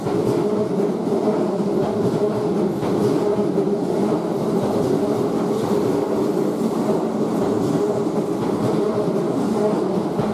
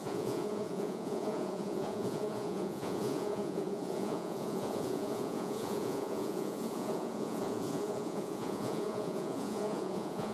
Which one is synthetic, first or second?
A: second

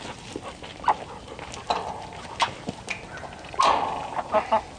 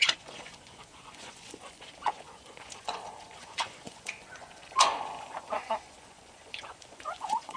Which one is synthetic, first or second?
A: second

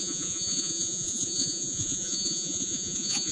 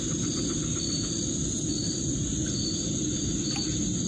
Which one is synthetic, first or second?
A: first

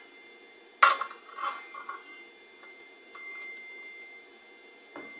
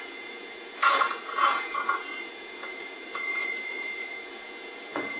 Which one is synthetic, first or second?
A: second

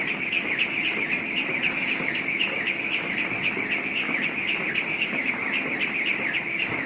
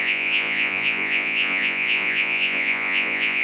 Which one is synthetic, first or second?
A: second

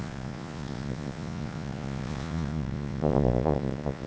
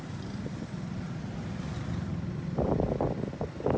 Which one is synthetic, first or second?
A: first